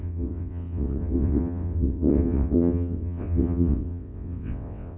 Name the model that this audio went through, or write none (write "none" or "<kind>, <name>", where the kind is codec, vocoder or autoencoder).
vocoder, WaveNeXt